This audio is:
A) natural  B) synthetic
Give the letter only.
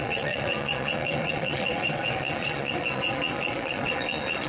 B